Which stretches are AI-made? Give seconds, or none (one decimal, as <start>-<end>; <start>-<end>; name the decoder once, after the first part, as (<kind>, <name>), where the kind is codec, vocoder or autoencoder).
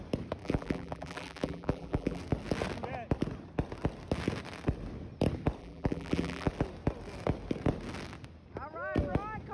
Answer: 0.4-2.2 (vocoder, BigVGAN v2); 5.6-6.5